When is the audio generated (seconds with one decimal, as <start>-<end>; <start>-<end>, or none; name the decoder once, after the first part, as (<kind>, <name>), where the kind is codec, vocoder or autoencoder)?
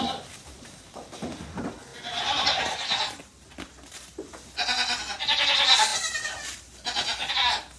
none